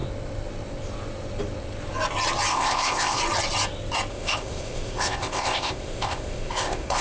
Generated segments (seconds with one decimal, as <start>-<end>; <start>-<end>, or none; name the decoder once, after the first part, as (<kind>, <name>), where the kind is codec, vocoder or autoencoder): 2.5-3.2 (codec, ZipCodec); 4.1-7.0